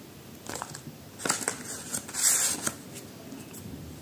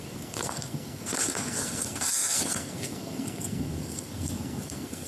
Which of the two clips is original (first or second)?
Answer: first